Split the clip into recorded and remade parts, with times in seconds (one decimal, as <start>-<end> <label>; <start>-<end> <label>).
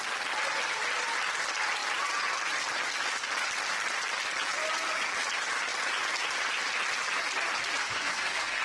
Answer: 0.0-7.8 recorded; 7.8-8.6 remade